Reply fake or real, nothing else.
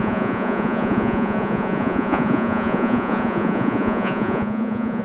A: fake